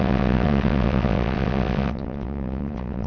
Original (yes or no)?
no